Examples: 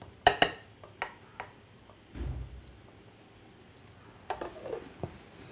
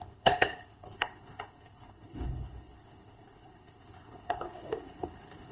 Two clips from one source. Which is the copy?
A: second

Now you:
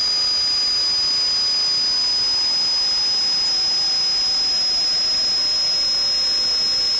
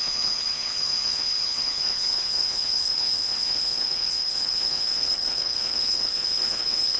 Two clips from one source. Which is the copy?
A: second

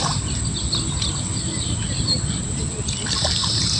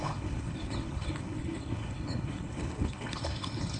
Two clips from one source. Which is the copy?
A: second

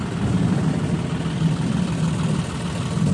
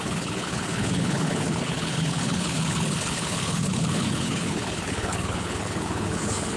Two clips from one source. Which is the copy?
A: second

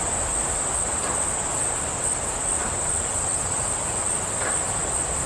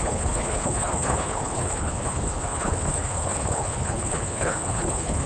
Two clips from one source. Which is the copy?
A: second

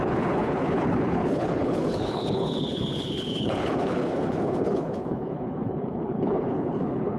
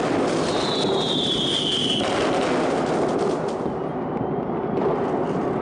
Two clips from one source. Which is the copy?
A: first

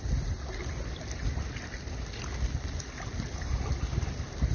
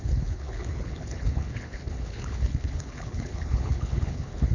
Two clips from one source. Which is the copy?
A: second